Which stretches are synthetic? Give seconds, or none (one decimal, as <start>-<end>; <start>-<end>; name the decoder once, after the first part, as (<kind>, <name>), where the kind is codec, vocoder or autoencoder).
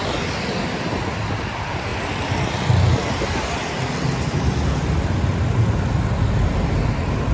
none